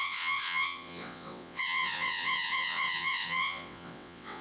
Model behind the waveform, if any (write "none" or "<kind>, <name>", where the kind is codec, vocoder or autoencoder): vocoder, WaveNeXt